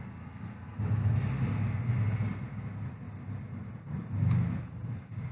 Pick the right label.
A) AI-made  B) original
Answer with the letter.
B